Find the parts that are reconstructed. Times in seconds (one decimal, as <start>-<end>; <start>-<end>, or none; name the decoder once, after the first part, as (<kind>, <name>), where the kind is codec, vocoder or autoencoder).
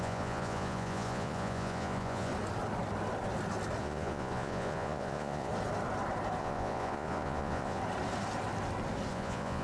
0.0-2.3 (vocoder, Vocos); 3.8-5.5; 6.4-7.8; 9.1-9.6